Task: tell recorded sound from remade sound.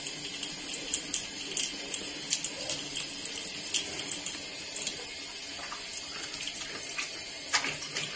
recorded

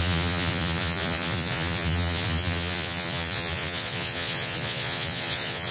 remade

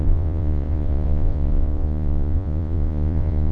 remade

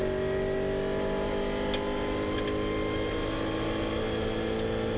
recorded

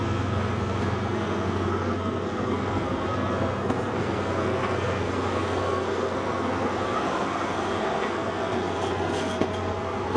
remade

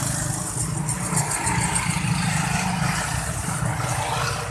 recorded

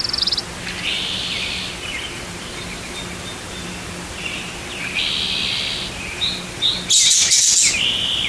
recorded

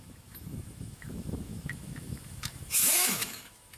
remade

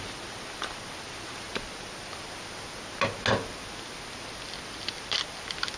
recorded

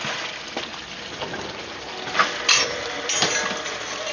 recorded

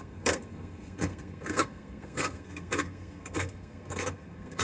remade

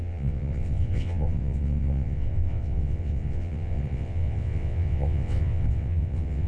remade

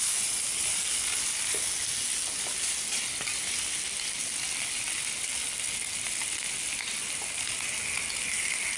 recorded